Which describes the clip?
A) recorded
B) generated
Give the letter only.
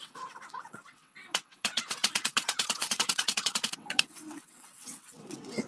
B